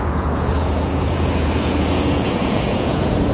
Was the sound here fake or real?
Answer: fake